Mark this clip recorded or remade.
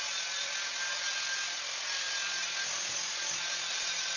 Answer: recorded